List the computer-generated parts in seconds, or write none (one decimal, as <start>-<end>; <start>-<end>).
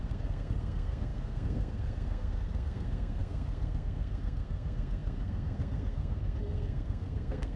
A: 0.0-7.6